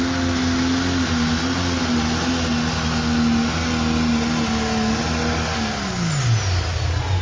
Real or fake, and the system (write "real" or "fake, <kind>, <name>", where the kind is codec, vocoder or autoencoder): real